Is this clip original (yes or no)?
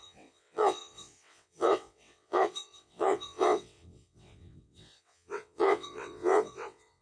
no